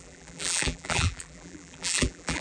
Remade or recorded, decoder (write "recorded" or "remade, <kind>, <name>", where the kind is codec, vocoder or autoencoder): remade, vocoder, BigVGAN v2